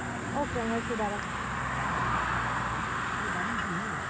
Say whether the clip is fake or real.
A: real